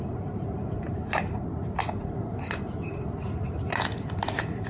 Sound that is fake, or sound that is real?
fake